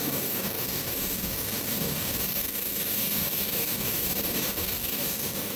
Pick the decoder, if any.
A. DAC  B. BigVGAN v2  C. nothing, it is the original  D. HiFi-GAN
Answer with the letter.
A